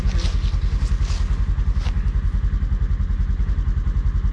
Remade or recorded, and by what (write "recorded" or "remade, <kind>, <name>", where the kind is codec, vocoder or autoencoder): recorded